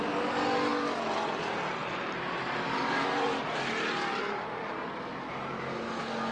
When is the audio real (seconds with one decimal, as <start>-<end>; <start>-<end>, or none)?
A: 0.0-1.8; 5.5-6.3